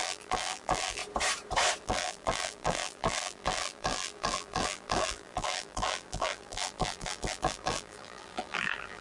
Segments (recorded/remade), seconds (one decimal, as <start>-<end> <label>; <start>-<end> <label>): 0.0-1.0 remade; 1.0-1.8 recorded; 1.8-9.0 remade